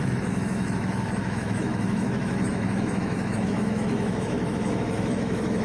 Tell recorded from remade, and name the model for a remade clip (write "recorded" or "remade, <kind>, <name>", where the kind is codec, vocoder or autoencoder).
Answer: remade, autoencoder, DAC-VAE